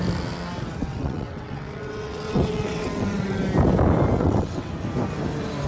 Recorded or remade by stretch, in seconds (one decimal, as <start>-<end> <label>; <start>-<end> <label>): 0.0-0.8 recorded; 0.8-3.4 remade; 3.4-4.2 recorded; 4.2-4.7 remade; 4.7-5.7 recorded